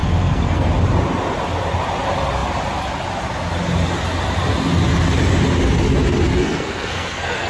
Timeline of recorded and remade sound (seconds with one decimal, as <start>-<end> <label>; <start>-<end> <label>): 0.0-0.7 remade; 0.7-6.3 recorded; 6.3-7.5 remade